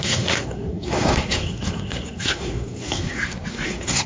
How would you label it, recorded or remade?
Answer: remade